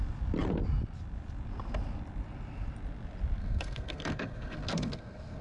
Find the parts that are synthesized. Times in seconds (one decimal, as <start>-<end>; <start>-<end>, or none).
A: 3.4-5.4